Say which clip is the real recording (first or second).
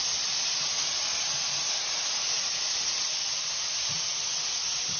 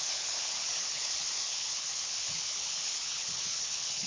first